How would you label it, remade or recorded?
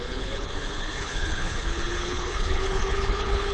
remade